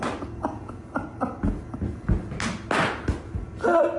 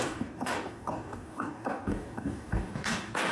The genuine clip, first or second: first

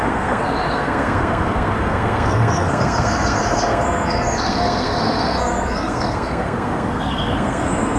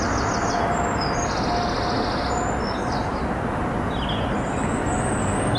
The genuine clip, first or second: second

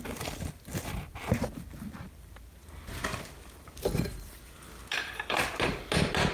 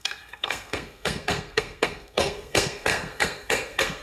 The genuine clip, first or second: first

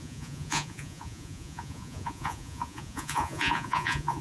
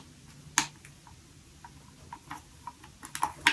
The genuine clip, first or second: second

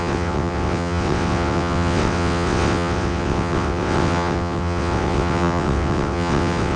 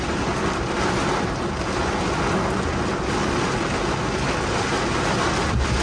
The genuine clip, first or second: second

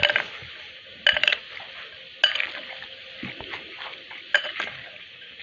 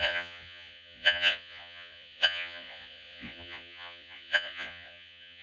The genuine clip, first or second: first